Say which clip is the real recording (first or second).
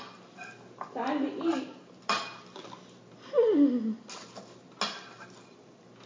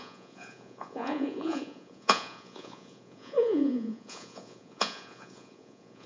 first